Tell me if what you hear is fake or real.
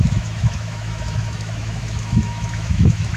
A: fake